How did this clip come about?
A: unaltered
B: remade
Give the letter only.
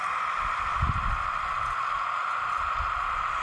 A